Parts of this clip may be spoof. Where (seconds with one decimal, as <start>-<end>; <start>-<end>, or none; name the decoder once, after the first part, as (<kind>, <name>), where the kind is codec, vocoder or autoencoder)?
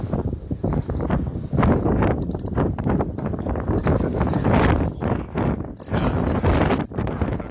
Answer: none